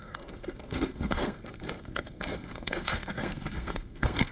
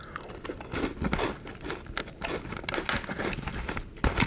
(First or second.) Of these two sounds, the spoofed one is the first